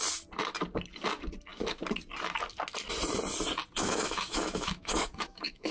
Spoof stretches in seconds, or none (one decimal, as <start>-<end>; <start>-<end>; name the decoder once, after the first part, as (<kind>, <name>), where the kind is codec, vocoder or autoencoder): 3.8-5.7 (autoencoder, DAC-VAE)